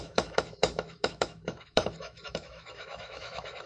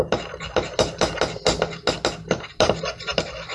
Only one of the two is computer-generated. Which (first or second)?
first